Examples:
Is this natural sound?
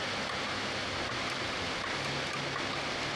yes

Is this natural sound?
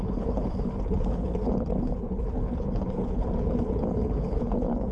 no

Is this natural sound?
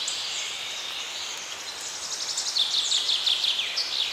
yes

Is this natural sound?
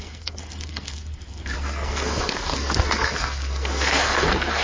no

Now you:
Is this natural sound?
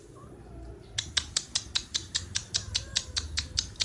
yes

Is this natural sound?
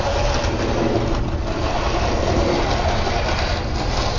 yes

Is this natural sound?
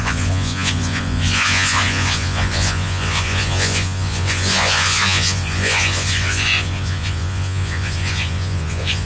no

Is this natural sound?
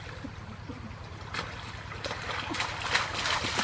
yes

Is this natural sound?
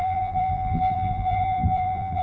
no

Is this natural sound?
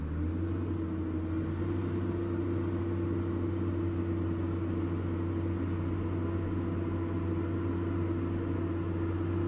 yes